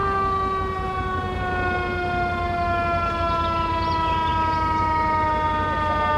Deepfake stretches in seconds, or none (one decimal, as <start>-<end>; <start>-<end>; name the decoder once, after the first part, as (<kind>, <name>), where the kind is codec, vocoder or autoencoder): none